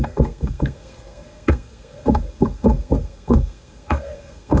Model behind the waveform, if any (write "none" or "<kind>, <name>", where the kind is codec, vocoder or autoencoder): codec, SNAC